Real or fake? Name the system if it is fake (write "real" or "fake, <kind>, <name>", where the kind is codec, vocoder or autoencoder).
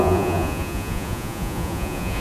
fake, vocoder, Vocos